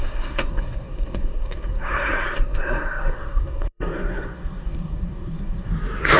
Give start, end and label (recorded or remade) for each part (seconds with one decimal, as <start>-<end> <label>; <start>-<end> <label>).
0.0-5.7 remade; 5.7-6.2 recorded